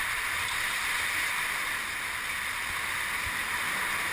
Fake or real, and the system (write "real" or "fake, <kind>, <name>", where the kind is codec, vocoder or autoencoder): real